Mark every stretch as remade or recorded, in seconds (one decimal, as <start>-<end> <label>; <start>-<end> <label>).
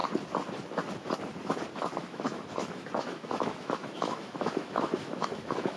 0.0-2.0 recorded; 2.0-5.8 remade